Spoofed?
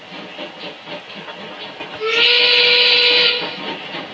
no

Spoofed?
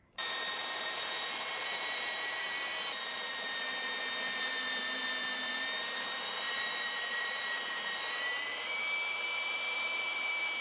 yes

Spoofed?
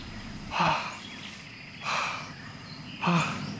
yes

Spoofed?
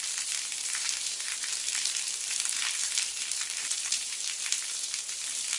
yes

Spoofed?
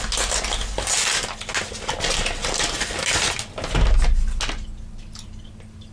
no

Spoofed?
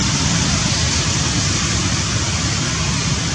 no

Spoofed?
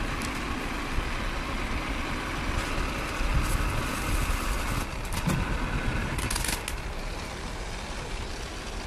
no